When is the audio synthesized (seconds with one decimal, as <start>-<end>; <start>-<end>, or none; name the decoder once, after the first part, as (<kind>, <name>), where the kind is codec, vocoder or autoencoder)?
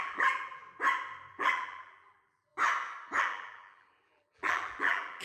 0.0-0.6 (vocoder, BigVGAN v2); 1.3-2.5; 3.2-5.2